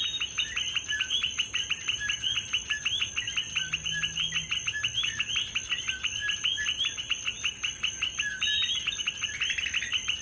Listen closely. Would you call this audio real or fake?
real